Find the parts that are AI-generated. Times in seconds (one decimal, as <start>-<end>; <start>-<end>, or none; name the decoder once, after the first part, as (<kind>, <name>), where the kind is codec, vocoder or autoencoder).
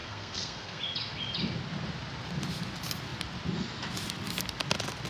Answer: 0.0-0.8 (codec, SNAC)